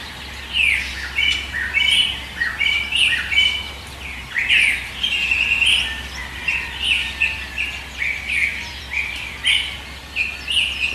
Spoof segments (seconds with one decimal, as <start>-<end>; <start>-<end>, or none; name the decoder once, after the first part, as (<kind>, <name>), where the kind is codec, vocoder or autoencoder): 8.5-9.3 (vocoder, BigVGAN v2)